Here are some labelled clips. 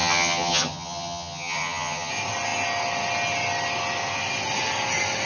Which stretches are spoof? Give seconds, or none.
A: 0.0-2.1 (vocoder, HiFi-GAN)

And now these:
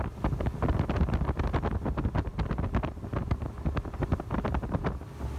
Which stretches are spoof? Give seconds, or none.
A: none

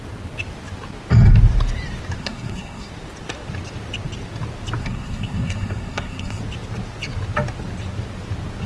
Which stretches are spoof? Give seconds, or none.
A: 2.2-2.9 (codec, SNAC); 4.8-6.4

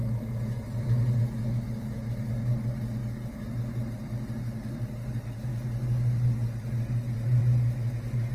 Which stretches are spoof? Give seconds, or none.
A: none

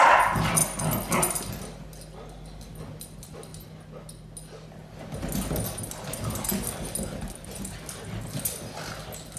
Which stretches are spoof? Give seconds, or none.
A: none

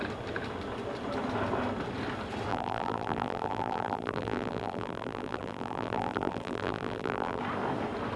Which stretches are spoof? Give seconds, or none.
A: 2.5-7.4 (vocoder, BigVGAN v2)

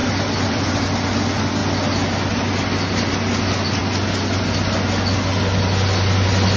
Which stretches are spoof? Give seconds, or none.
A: 0.0-0.7 (vocoder, BigVGAN v2)